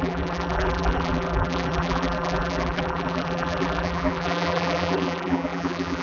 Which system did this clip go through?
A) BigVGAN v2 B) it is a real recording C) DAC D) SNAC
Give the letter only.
A